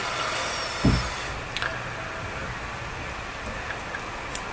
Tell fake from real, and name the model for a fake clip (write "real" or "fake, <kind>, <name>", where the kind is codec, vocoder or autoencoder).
real